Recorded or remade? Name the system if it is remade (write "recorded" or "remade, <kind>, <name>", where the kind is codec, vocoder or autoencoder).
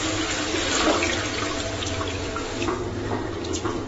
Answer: recorded